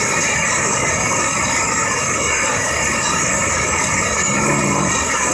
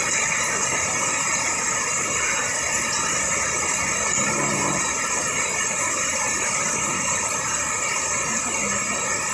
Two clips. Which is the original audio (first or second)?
second